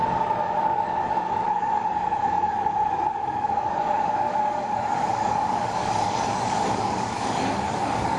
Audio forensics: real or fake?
fake